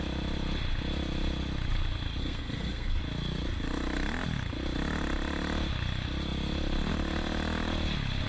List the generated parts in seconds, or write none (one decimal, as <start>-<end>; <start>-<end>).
2.2-3.0